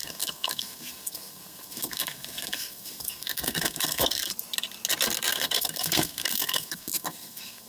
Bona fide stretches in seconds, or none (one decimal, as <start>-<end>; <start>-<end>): 4.3-5.3